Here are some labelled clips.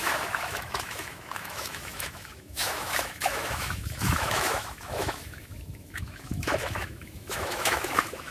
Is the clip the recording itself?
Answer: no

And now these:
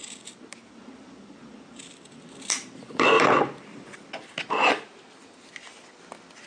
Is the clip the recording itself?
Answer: yes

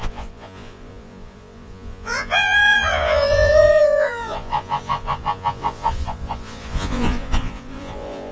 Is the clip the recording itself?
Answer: no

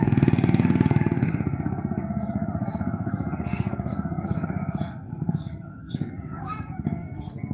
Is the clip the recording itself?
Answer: no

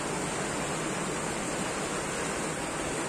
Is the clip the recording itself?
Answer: yes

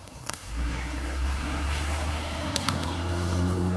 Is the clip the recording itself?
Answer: no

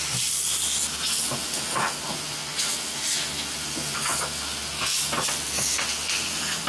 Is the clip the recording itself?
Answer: yes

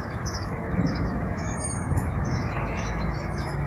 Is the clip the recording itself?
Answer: no